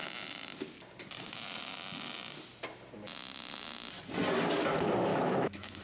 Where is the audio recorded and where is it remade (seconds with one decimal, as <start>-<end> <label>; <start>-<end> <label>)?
0.0-5.1 recorded; 5.1-5.8 remade